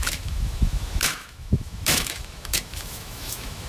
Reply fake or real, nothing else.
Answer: fake